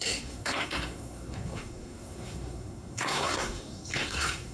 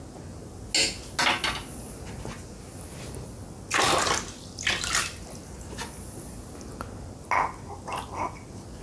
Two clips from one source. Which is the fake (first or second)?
first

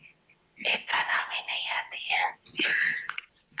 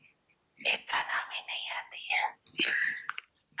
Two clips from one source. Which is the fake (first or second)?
first